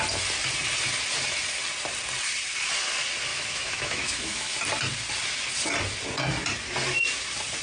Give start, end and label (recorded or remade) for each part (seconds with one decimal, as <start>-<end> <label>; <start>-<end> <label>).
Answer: 0.0-3.3 recorded; 3.3-4.6 remade; 4.6-7.6 recorded